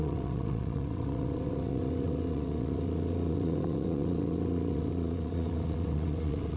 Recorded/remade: remade